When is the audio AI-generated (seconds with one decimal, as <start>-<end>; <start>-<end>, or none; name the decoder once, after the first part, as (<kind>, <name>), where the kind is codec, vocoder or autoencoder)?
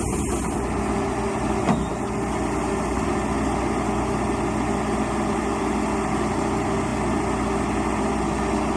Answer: none